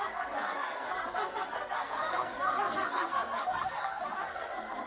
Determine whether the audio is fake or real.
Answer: fake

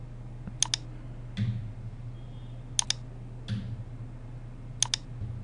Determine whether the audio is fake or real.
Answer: real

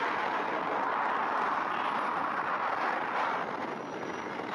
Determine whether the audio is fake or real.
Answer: real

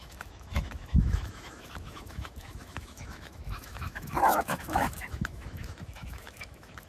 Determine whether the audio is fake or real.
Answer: fake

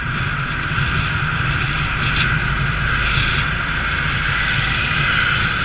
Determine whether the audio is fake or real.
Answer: real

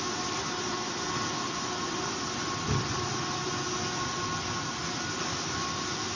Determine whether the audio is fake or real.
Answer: real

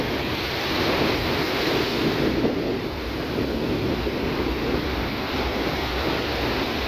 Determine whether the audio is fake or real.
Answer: real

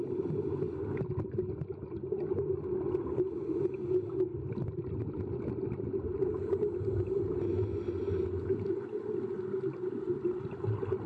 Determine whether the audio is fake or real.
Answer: real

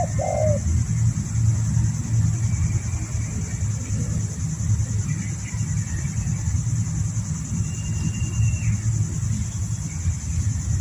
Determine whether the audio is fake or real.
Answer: real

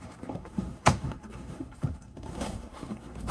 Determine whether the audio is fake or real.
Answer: fake